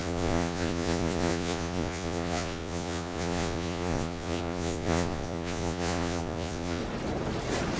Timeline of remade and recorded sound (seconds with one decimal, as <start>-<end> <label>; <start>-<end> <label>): 0.0-6.8 remade; 6.8-7.8 recorded